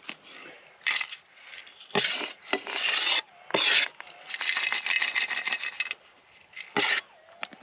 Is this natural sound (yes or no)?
yes